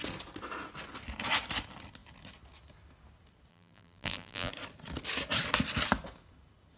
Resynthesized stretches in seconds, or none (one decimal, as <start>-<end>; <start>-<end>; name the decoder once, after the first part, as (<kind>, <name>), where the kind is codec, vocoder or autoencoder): 3.5-4.5 (vocoder, BigVGAN v2)